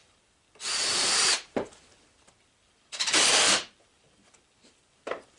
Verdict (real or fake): real